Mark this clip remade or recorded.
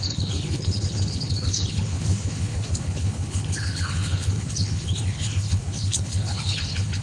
remade